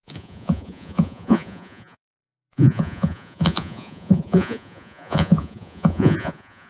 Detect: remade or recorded remade